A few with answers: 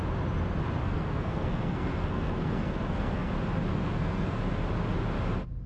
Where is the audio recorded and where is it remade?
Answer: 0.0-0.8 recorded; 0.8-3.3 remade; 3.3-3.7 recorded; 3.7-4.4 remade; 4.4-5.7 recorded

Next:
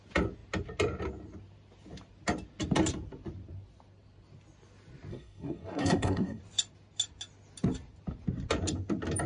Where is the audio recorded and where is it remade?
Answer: 0.0-5.1 recorded; 5.1-6.4 remade; 6.4-9.3 recorded

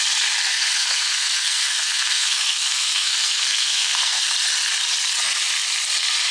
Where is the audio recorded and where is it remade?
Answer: 0.0-0.5 recorded; 0.5-4.3 remade; 4.3-6.3 recorded

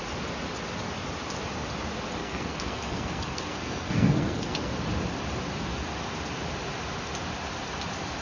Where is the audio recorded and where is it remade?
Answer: 0.0-2.2 recorded; 2.2-4.7 remade; 4.7-8.2 recorded

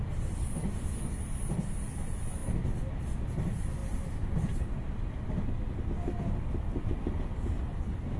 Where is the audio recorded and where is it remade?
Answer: 0.0-8.2 recorded